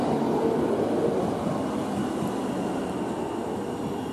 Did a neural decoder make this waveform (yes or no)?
no